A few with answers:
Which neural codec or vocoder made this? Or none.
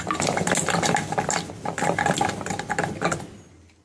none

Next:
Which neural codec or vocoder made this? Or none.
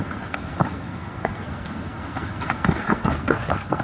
codec, SNAC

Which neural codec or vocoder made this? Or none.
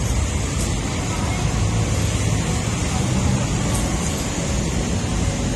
none